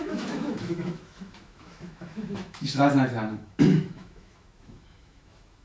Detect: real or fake fake